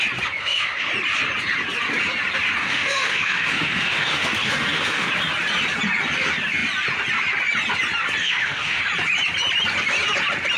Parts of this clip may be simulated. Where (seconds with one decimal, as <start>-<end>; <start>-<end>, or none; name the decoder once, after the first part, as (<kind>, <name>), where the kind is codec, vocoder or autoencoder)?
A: 0.4-0.9 (autoencoder, DAC-VAE); 2.6-5.1; 8.2-8.8